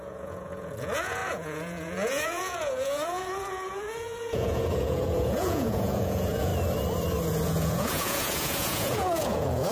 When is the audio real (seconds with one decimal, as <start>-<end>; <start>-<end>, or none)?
6.5-7.3

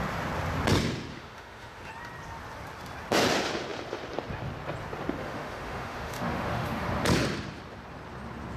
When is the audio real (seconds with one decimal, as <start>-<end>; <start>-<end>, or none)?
0.0-1.1; 1.9-5.2; 6.9-8.6